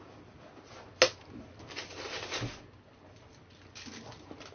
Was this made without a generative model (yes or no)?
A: yes